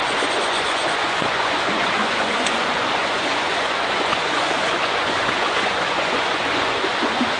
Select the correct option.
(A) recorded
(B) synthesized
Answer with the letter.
B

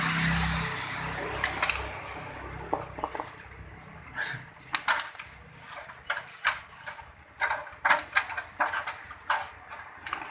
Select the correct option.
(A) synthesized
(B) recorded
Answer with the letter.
B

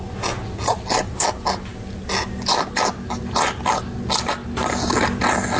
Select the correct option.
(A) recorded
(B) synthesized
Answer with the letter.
A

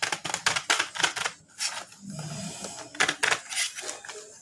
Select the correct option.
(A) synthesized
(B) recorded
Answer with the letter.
B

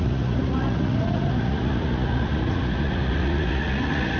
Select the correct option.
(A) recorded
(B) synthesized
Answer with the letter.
B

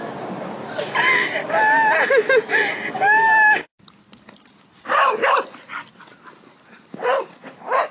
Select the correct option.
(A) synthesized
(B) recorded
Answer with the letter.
B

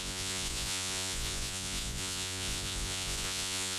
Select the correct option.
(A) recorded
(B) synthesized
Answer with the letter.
B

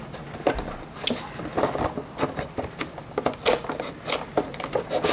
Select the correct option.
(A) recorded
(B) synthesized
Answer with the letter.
A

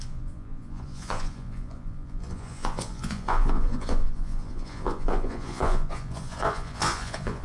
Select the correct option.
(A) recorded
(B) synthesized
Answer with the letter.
B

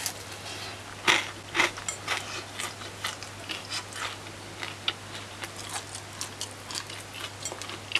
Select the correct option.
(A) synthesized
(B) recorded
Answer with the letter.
B